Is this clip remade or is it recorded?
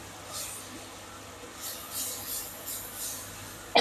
recorded